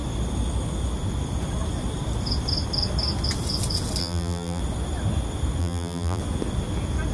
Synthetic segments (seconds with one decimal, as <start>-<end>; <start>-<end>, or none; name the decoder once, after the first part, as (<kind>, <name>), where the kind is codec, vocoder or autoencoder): 4.0-4.6 (vocoder, BigVGAN v2); 5.6-6.2